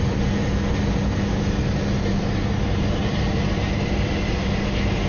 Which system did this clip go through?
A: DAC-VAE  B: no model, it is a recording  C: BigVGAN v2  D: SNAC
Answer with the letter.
B